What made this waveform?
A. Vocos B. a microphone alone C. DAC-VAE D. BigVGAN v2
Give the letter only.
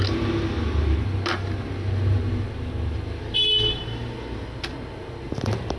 B